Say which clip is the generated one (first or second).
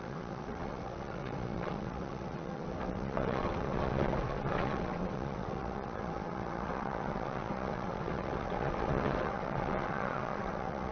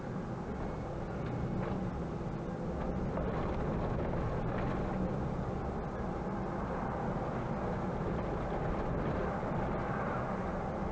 first